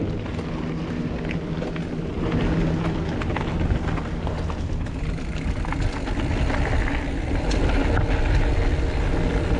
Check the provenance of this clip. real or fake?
real